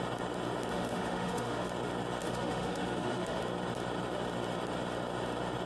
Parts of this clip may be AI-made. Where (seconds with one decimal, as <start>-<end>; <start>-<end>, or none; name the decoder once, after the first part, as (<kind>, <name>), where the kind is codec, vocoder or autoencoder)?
0.7-1.7 (autoencoder, DAC-VAE); 2.2-3.4